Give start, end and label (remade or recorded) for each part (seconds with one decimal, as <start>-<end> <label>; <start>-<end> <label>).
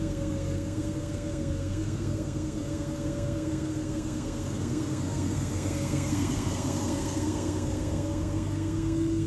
0.0-9.3 remade